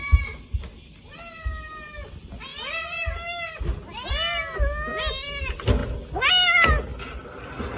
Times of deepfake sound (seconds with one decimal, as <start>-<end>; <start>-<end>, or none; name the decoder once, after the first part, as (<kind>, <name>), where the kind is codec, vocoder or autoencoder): none